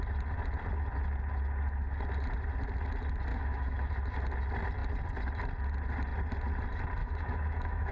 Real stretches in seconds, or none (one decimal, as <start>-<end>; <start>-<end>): 0.0-3.3; 3.9-7.0